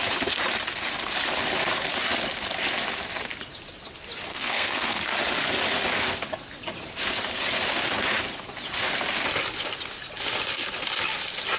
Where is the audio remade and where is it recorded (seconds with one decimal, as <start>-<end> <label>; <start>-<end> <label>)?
0.0-4.3 recorded; 4.3-5.0 remade; 5.0-11.6 recorded